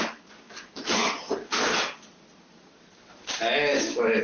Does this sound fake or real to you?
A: real